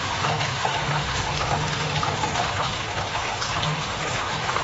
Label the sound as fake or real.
fake